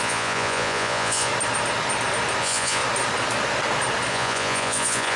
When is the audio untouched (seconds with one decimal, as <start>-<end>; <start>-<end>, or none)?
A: 1.3-2.4; 2.8-4.1